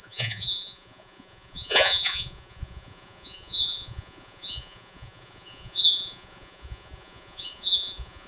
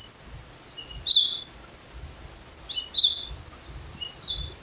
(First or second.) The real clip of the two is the second